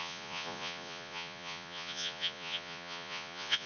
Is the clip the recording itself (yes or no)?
no